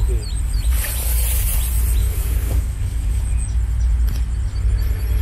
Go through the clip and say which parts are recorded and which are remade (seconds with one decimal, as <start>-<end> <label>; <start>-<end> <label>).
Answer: 0.0-2.0 recorded; 2.0-3.2 remade; 3.2-5.2 recorded